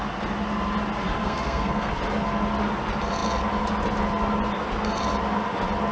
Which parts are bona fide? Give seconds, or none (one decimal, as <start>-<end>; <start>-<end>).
0.0-1.2; 1.9-5.9